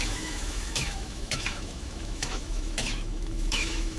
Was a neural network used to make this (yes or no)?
yes